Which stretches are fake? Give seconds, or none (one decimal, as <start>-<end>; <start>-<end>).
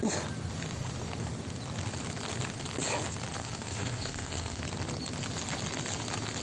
3.4-4.6